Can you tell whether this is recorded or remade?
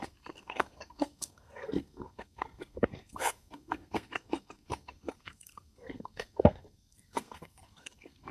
remade